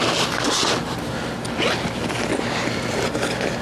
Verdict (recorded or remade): recorded